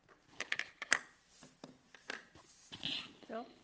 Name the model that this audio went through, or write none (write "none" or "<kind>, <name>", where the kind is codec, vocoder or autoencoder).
none